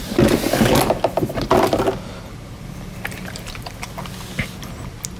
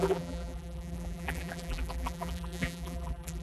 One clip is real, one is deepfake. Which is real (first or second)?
first